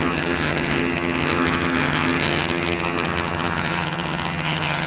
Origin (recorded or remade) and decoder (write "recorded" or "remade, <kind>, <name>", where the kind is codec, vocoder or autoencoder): remade, vocoder, HiFi-GAN